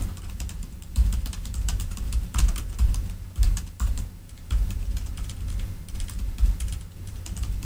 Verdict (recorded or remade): remade